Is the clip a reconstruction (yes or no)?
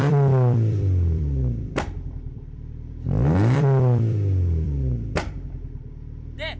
yes